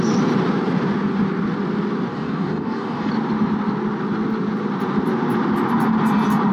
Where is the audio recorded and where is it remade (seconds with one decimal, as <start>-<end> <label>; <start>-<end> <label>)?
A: 0.0-2.1 recorded; 2.1-3.1 remade; 3.1-6.5 recorded

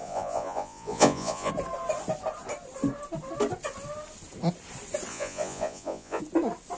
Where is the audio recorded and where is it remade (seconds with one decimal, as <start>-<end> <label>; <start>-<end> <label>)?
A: 0.0-1.5 remade; 1.5-5.1 recorded; 5.1-6.2 remade; 6.2-6.8 recorded

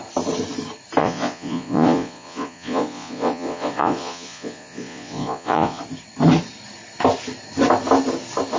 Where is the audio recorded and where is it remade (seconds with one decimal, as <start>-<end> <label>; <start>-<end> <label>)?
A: 0.0-1.0 recorded; 1.0-5.8 remade; 5.8-8.6 recorded

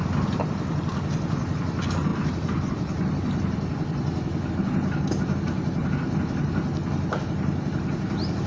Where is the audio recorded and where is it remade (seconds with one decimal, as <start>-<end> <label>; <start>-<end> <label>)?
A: 0.0-0.9 recorded; 0.9-1.6 remade; 1.6-2.1 recorded; 2.1-4.5 remade; 4.5-8.5 recorded

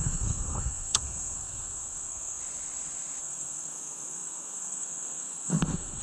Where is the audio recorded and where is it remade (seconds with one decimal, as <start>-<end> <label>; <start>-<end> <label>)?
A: 0.0-2.4 remade; 2.4-3.2 recorded; 3.2-6.0 remade

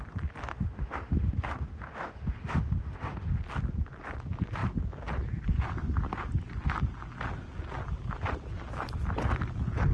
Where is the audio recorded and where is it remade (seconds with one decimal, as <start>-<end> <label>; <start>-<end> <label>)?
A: 0.0-0.5 recorded; 0.5-3.4 remade; 3.4-9.9 recorded